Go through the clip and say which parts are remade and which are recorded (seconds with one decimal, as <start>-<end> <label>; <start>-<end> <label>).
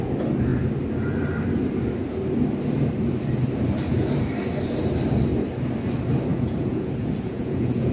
0.0-6.3 recorded; 6.3-7.9 remade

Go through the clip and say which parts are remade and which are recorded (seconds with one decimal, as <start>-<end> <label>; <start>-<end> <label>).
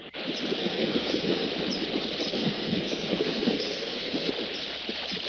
0.0-0.6 recorded; 0.6-1.5 remade; 1.5-2.4 recorded; 2.4-4.3 remade; 4.3-5.3 recorded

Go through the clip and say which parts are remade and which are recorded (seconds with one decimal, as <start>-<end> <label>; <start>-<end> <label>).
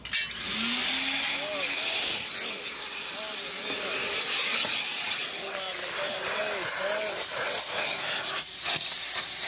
0.0-5.7 recorded; 5.7-6.4 remade; 6.4-9.5 recorded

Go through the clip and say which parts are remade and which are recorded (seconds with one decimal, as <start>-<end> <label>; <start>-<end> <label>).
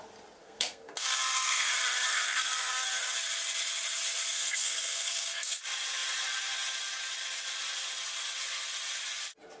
0.0-0.4 recorded; 0.4-1.7 remade; 1.7-2.1 recorded; 2.1-2.7 remade; 2.7-4.3 recorded; 4.3-5.6 remade; 5.6-9.6 recorded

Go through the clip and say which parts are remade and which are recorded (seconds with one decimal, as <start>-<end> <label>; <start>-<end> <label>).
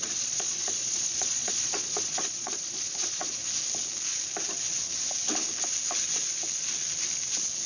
0.0-3.4 remade; 3.4-7.7 recorded